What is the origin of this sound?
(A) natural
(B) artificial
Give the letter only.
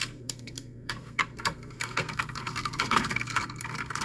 B